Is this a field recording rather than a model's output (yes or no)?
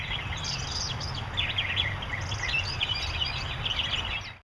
yes